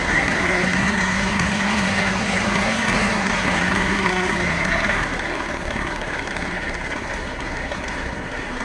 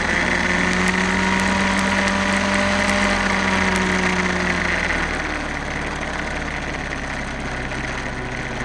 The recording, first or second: second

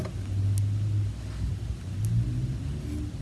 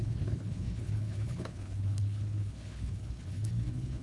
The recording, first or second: first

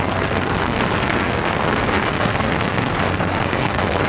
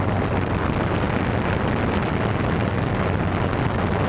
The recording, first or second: second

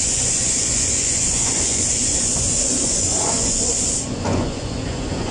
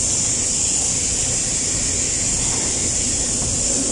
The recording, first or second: second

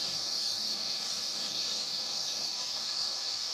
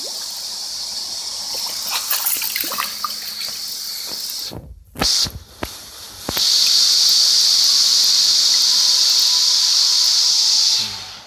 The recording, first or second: second